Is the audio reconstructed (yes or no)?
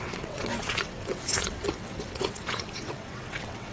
yes